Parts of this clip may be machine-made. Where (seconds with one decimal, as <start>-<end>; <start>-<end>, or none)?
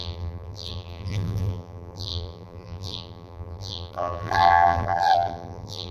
0.0-5.9